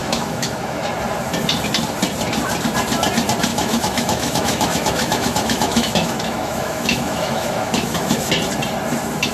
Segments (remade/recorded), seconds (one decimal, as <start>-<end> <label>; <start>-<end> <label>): 0.0-0.8 remade; 0.8-3.5 recorded; 3.5-8.3 remade; 8.3-9.3 recorded

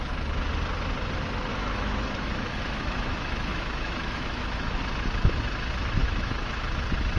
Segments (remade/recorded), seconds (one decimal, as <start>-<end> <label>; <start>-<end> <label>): 0.0-1.5 recorded; 1.5-4.8 remade; 4.8-6.0 recorded; 6.0-6.6 remade; 6.6-7.2 recorded

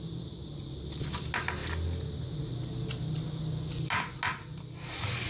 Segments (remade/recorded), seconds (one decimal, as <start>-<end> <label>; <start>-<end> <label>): 0.0-5.3 recorded

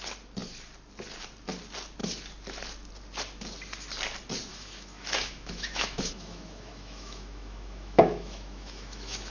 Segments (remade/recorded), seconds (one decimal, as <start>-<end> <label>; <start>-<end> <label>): 0.0-4.5 recorded; 4.5-9.3 remade

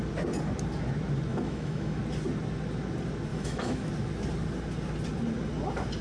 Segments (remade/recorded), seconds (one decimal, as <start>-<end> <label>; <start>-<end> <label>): 0.0-1.3 recorded; 1.3-2.0 remade; 2.0-3.3 recorded; 3.3-3.9 remade; 3.9-6.0 recorded

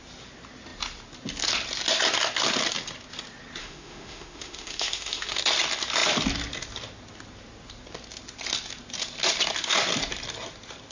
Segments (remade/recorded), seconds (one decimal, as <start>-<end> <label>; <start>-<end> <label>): 0.0-3.6 recorded; 3.6-5.4 remade; 5.4-10.9 recorded

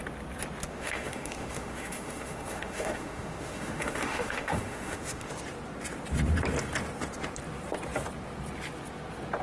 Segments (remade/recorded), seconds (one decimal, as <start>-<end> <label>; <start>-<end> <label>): 0.0-0.7 recorded; 0.7-5.3 remade; 5.3-9.4 recorded